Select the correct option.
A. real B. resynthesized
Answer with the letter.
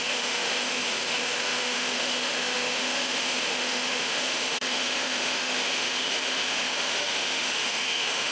B